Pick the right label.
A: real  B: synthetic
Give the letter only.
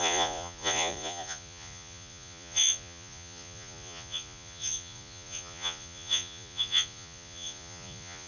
B